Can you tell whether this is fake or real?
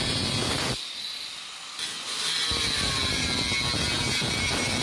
real